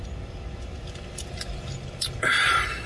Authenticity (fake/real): fake